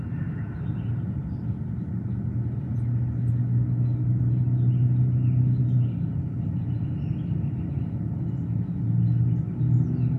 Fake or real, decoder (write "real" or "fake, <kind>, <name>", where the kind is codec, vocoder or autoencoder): real